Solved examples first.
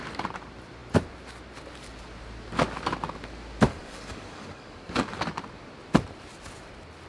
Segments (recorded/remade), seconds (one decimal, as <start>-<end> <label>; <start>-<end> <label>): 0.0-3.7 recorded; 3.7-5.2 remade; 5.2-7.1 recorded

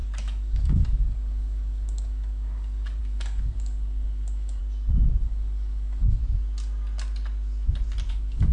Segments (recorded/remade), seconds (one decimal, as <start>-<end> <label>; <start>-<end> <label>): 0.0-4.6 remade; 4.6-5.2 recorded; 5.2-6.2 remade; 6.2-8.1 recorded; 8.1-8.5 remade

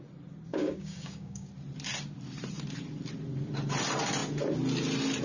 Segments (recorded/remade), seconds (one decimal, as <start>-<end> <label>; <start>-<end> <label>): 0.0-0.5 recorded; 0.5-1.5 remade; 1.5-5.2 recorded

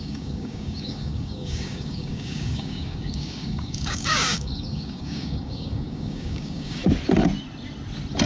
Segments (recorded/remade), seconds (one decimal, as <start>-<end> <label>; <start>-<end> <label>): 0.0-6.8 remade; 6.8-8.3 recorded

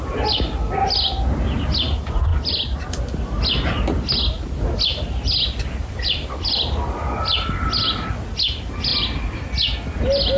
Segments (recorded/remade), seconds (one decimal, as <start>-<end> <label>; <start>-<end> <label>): 0.0-10.4 recorded